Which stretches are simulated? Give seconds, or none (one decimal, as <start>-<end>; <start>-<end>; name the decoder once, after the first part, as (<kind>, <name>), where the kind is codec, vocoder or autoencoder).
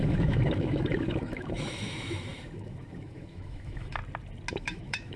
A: 0.0-4.0 (autoencoder, DAC-VAE); 4.5-5.2